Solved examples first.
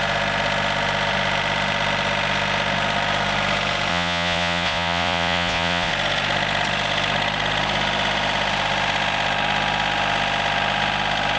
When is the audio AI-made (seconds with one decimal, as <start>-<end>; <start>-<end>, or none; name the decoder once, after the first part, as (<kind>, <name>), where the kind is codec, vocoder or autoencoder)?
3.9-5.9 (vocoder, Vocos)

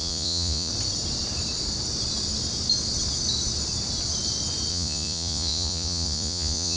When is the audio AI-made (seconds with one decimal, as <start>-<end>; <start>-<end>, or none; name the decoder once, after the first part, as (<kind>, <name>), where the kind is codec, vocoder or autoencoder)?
0.0-0.7 (vocoder, Vocos); 4.7-6.8

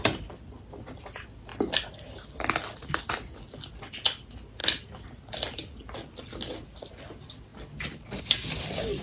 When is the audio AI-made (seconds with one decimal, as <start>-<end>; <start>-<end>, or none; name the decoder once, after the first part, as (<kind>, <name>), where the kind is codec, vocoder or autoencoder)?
none

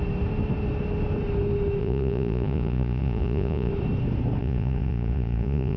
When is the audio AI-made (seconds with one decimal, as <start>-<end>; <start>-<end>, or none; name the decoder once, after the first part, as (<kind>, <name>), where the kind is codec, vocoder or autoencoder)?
1.8-3.7 (vocoder, Vocos); 4.4-5.8

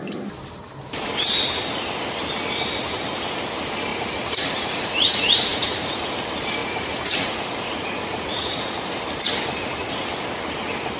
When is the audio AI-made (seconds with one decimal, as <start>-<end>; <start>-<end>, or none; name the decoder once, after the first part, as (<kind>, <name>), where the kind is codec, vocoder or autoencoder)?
3.9-6.1 (vocoder, Vocos); 6.6-9.0

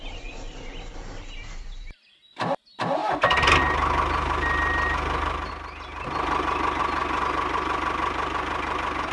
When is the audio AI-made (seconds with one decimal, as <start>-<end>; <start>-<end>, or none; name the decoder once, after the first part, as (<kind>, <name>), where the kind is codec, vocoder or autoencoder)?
none

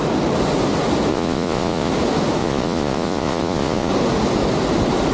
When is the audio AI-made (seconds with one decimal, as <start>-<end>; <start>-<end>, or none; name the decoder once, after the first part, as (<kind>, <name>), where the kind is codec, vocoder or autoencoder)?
1.1-1.9 (vocoder, Vocos); 2.4-3.9

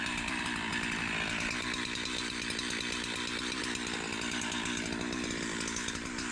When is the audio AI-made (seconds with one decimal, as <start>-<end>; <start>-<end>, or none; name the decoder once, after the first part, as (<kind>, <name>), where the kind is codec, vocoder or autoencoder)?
none